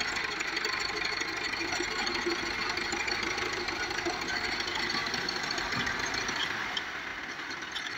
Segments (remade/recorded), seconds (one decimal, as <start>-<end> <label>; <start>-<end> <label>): 0.0-2.3 recorded; 2.3-3.9 remade; 3.9-5.0 recorded; 5.0-5.9 remade; 5.9-8.0 recorded